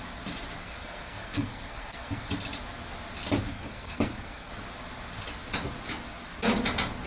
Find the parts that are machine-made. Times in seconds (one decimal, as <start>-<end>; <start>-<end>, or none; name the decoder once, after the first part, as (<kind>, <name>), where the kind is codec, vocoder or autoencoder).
0.6-2.3 (codec, SNAC); 3.5-4.5